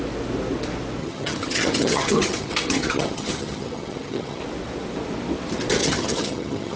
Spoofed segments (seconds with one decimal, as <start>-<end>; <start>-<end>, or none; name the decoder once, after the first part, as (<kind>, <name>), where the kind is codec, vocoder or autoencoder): 1.0-4.4 (vocoder, HiFi-GAN); 5.8-6.8